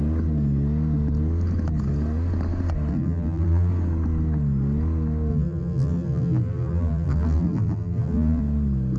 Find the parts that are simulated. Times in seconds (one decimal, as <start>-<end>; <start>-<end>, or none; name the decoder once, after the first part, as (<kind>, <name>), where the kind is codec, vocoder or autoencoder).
2.9-3.7 (vocoder, BigVGAN v2); 5.3-8.4